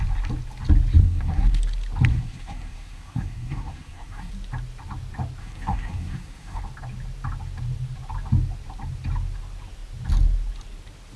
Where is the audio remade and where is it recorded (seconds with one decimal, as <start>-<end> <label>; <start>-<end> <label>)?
0.0-1.0 recorded; 1.0-1.6 remade; 1.6-2.1 recorded; 2.1-4.3 remade; 4.3-5.4 recorded; 5.4-6.6 remade; 6.6-11.2 recorded